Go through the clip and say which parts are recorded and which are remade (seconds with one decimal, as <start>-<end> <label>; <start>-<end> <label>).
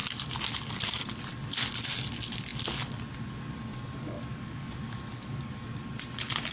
0.0-3.7 recorded; 3.7-5.5 remade; 5.5-6.5 recorded